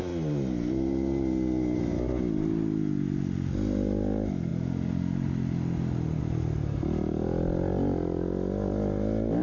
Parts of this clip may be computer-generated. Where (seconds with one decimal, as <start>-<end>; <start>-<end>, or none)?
none